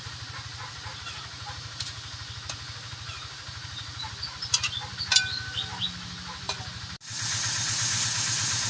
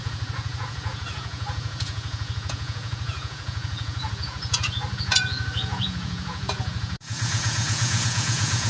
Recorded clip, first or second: first